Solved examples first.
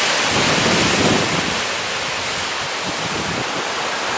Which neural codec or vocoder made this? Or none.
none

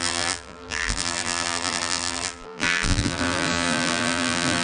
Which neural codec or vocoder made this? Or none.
vocoder, BigVGAN v2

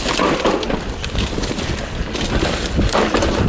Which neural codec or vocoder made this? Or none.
none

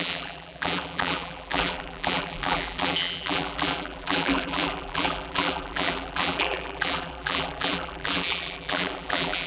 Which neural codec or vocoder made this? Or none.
vocoder, BigVGAN v2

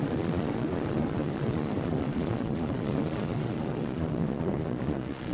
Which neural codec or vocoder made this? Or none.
vocoder, Vocos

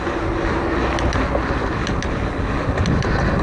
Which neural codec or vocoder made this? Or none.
none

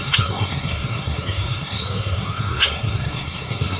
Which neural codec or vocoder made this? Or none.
codec, SNAC